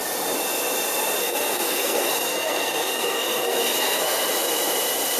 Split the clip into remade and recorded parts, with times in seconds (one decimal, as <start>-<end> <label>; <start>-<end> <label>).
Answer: 0.0-1.2 recorded; 1.2-4.3 remade; 4.3-5.2 recorded